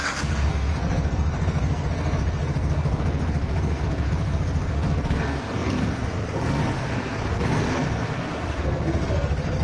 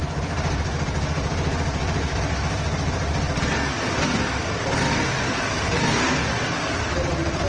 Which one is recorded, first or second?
second